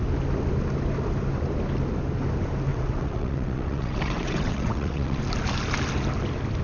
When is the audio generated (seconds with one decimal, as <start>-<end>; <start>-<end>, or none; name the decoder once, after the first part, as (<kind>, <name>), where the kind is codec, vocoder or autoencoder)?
2.7-5.2 (vocoder, WaveNeXt)